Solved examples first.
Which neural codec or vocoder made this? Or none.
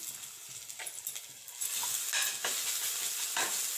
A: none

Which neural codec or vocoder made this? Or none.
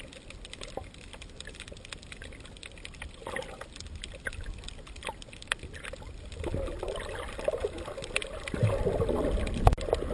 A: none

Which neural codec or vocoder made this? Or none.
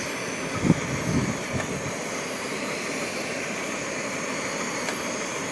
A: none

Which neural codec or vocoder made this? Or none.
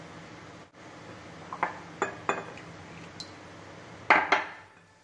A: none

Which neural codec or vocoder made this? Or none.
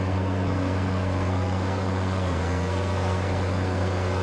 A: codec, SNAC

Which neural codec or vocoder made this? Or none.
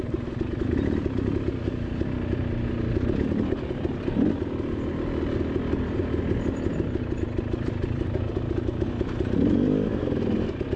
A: none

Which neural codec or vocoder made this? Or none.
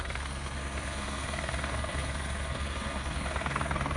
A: codec, SNAC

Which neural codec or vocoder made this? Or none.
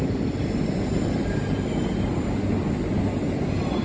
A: none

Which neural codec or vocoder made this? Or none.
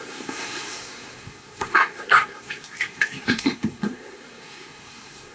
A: codec, SNAC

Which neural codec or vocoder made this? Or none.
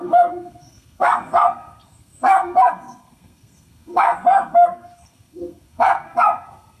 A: codec, SNAC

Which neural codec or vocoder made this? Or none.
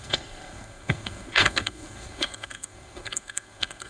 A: codec, SNAC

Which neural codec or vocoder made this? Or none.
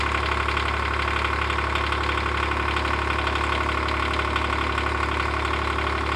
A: none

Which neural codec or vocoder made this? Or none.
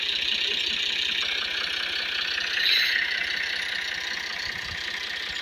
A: none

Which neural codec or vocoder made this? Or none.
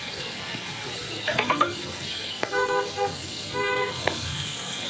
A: codec, SNAC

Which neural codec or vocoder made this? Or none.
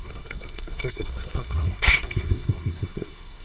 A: codec, SNAC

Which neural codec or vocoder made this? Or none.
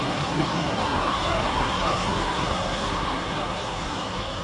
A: codec, SNAC